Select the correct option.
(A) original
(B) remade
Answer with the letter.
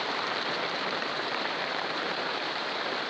B